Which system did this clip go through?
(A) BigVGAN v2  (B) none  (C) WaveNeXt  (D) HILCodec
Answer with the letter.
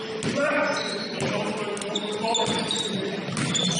B